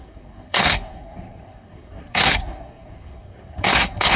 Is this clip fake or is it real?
fake